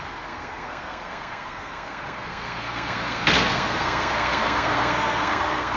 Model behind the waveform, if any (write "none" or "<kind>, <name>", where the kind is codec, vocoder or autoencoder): codec, SNAC